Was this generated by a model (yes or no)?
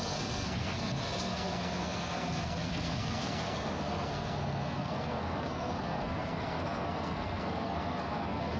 yes